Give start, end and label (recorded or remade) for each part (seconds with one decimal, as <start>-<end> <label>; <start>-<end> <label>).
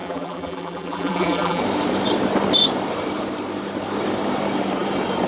0.0-1.6 remade; 1.6-5.3 recorded